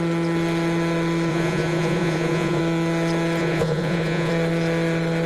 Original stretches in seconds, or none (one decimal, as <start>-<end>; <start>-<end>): 0.0-1.3; 2.6-3.4; 4.3-5.3